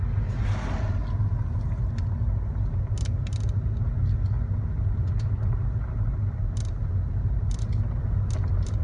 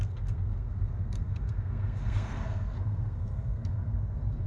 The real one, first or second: first